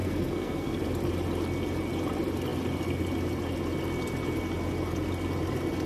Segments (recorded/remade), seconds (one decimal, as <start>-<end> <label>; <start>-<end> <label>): 0.0-0.8 remade; 0.8-5.9 recorded